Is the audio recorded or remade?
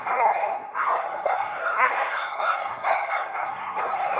remade